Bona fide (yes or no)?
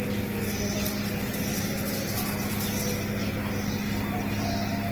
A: yes